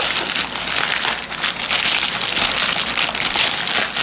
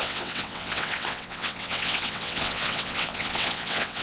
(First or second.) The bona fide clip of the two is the first